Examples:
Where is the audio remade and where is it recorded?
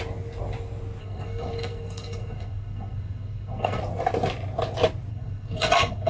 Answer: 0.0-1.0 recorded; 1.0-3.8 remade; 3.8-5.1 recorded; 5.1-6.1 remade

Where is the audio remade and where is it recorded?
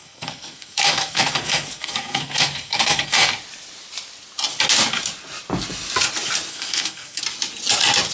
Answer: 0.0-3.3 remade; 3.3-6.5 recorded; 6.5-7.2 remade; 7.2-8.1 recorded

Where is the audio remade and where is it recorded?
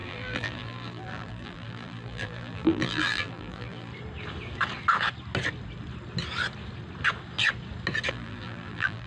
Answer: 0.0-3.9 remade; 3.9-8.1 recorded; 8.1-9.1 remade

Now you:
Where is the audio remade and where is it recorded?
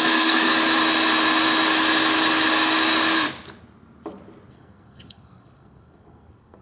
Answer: 0.0-0.5 remade; 0.5-4.5 recorded; 4.5-6.6 remade